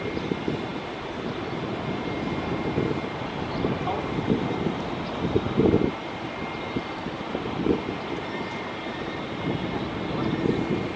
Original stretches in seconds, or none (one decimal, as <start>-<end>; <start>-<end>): 0.0-11.0